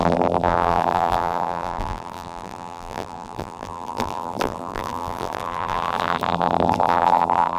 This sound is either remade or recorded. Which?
remade